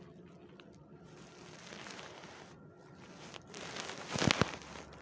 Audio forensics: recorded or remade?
recorded